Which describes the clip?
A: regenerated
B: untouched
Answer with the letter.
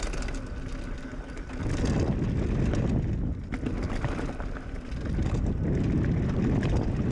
B